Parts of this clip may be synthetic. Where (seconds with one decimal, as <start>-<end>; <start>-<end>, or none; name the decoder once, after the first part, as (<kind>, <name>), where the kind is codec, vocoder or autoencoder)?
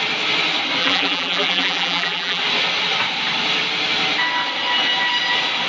0.8-2.4 (vocoder, BigVGAN v2)